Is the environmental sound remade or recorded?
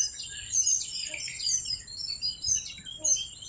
recorded